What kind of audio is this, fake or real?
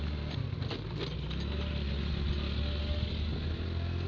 real